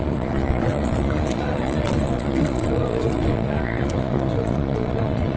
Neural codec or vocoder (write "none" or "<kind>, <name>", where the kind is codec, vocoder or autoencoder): vocoder, Vocos